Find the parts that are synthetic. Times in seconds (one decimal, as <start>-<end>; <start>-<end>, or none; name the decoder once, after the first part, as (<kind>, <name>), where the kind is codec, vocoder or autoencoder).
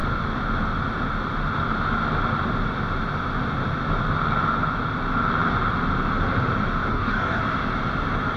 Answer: 6.9-7.4 (codec, DAC)